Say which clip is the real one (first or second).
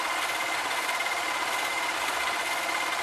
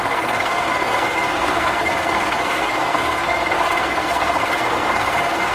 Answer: first